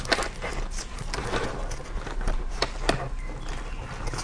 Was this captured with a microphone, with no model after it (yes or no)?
yes